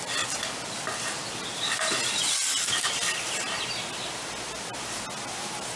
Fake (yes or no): no